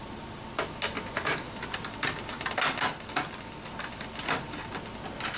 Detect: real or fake real